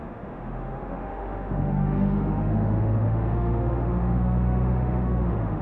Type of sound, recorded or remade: remade